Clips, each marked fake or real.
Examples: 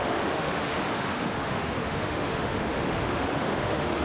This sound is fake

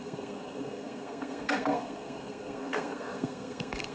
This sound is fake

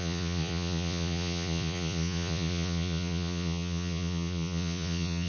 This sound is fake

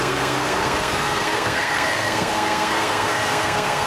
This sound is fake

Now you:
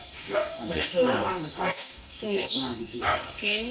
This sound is fake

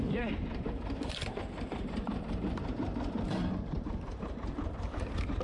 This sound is fake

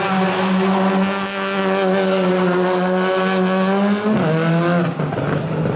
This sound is real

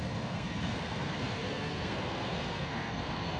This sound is fake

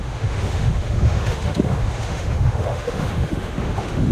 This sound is fake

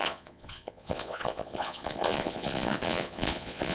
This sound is fake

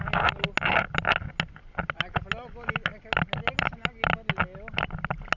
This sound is real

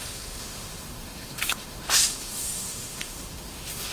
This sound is fake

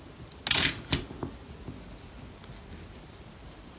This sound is real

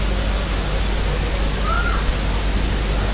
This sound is real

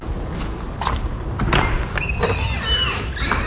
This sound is real